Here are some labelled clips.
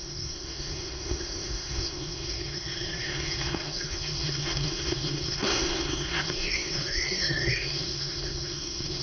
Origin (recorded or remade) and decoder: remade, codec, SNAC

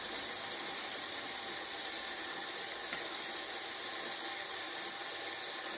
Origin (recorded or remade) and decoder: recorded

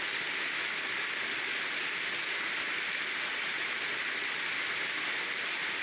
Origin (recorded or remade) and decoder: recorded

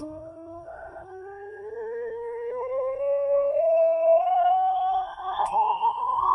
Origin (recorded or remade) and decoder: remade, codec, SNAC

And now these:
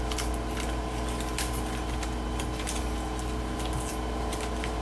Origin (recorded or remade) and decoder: recorded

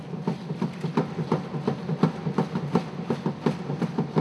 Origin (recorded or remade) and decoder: recorded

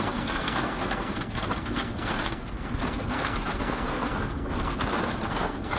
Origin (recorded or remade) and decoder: remade, codec, SNAC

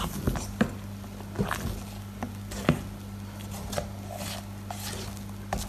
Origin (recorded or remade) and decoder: recorded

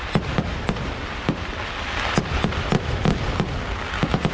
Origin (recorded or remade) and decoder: recorded